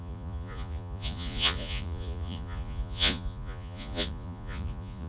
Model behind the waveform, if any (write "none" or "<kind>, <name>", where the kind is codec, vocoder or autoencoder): vocoder, Vocos